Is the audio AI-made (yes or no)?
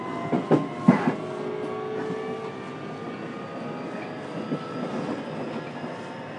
no